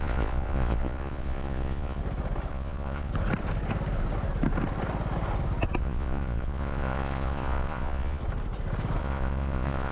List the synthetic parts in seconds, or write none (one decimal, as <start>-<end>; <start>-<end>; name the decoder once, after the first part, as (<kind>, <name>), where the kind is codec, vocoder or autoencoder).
0.0-2.0 (vocoder, Vocos); 2.5-3.1; 5.8-8.2; 9.0-9.9